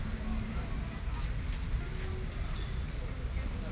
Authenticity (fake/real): real